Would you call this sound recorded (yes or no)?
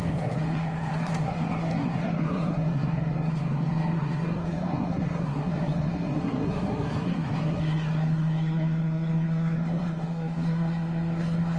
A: no